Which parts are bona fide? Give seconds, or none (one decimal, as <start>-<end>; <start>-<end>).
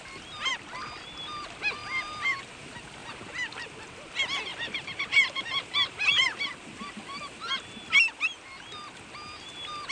0.0-1.8; 2.4-4.5; 6.9-9.9